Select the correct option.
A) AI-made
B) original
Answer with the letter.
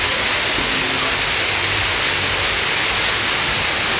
B